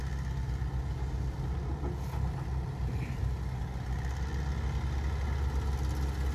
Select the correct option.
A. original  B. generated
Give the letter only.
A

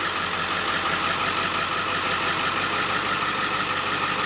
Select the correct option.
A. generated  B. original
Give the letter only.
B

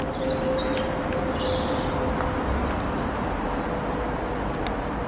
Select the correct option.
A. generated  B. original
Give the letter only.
B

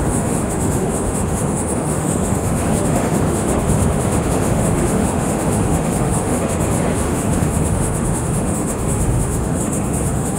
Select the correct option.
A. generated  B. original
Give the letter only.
A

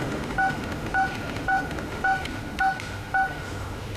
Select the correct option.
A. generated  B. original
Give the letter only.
A